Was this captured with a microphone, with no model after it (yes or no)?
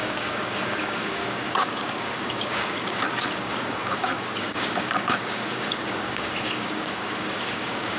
no